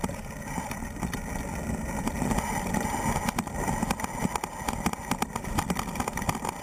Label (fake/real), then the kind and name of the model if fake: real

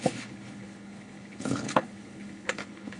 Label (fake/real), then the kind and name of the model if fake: fake, codec, HILCodec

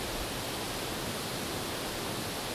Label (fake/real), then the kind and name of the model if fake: real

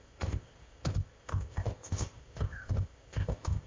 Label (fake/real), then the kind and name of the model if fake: fake, codec, ZipCodec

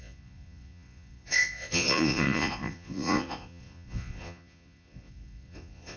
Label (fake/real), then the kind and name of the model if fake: fake, vocoder, Vocos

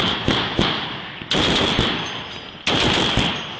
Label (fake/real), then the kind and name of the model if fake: real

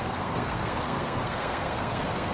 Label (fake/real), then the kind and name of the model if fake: fake, codec, SNAC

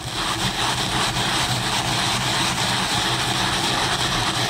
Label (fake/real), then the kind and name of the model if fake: real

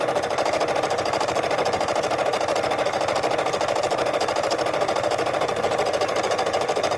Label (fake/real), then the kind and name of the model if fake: real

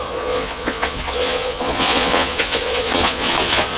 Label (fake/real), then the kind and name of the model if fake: fake, vocoder, Vocos